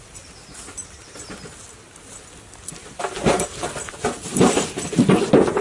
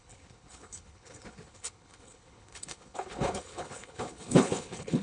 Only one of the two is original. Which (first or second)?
first